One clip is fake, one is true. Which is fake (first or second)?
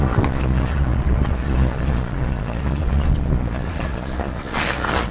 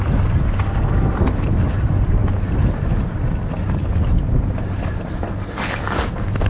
first